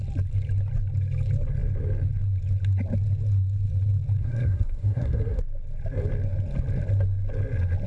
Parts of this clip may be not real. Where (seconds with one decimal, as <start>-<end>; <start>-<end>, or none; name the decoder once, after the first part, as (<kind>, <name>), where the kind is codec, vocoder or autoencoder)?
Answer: 4.2-5.4 (codec, SNAC)